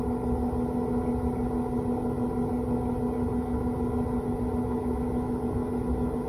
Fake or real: real